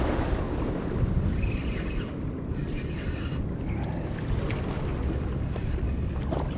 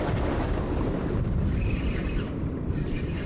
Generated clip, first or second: second